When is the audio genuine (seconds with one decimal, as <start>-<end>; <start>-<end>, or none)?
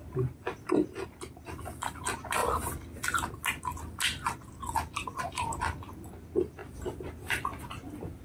0.0-8.2